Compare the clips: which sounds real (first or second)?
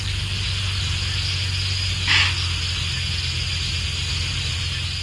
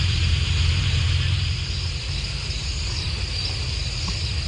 first